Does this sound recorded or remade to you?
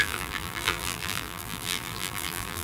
remade